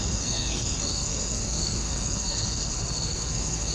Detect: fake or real fake